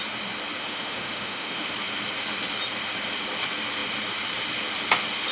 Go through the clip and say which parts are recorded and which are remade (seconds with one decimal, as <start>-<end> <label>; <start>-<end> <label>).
0.0-0.6 recorded; 0.6-1.7 remade; 1.7-5.3 recorded